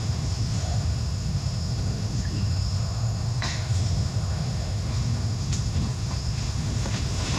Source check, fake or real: fake